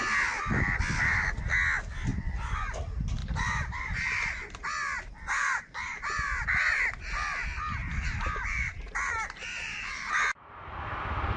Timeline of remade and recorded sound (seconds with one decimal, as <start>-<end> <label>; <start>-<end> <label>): 0.0-2.1 recorded; 2.1-2.6 remade; 2.6-3.2 recorded; 3.2-6.8 remade; 6.8-7.8 recorded; 7.8-10.1 remade; 10.1-11.4 recorded